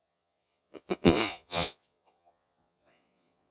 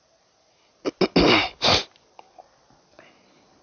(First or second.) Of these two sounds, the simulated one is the first